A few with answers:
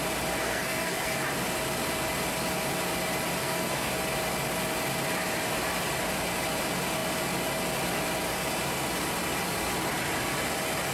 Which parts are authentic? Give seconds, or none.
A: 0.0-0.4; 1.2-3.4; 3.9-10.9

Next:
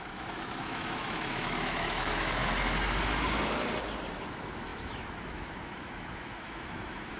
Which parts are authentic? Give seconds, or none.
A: 2.4-4.1

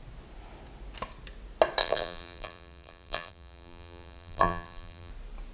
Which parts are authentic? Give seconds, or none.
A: 0.0-1.8; 5.1-5.5

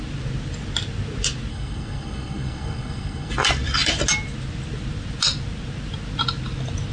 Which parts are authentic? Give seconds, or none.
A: 0.0-1.5; 3.3-6.9

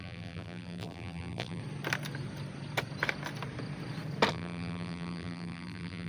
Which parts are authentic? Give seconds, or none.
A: 1.6-4.3

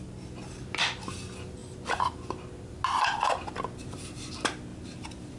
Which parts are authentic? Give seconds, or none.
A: 0.0-4.7